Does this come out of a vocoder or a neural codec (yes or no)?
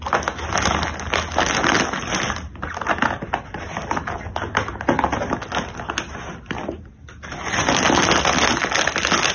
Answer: no